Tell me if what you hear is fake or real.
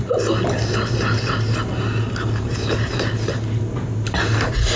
real